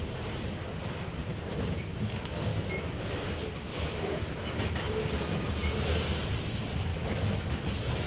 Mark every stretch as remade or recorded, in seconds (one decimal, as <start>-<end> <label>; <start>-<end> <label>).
0.0-2.5 recorded; 2.5-3.0 remade; 3.0-3.7 recorded; 3.7-4.9 remade; 4.9-6.9 recorded; 6.9-7.6 remade; 7.6-8.1 recorded